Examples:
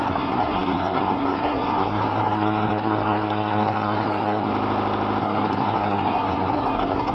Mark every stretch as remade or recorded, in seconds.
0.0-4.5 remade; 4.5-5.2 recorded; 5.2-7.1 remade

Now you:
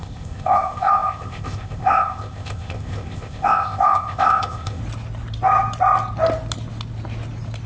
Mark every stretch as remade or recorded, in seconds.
0.0-4.8 remade; 4.8-7.7 recorded

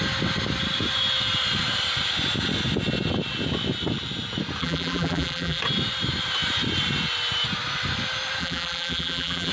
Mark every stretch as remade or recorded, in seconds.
0.0-4.6 recorded; 4.6-5.6 remade; 5.6-8.4 recorded; 8.4-9.5 remade

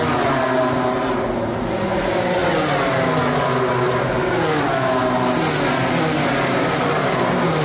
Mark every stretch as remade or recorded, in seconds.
0.0-7.6 recorded

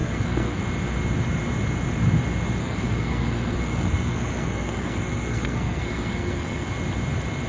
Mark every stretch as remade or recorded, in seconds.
0.0-0.6 remade; 0.6-2.6 recorded; 2.6-6.7 remade; 6.7-7.5 recorded

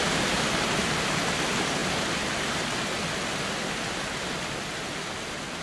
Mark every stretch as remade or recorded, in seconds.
0.0-5.6 recorded

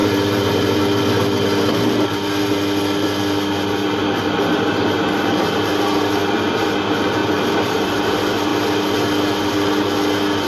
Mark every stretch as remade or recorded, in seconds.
0.0-0.8 remade; 0.8-7.2 recorded; 7.2-8.0 remade; 8.0-10.5 recorded

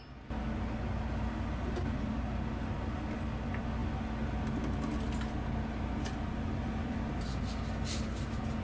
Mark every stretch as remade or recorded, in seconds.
0.0-8.6 recorded